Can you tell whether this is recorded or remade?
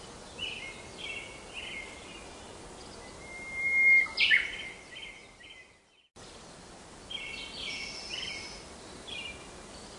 recorded